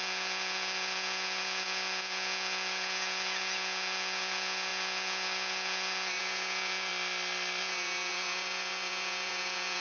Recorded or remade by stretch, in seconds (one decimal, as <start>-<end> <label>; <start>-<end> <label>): 0.0-6.9 remade; 6.9-7.6 recorded; 7.6-9.8 remade